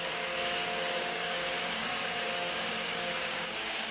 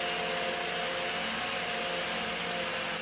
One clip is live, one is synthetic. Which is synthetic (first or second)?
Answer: first